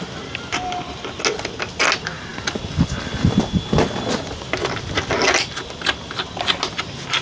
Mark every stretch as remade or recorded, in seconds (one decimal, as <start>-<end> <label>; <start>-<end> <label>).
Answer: 0.0-7.2 recorded